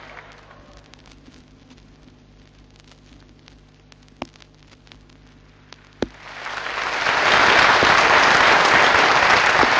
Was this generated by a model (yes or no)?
no